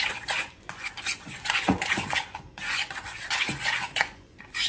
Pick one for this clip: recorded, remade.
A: remade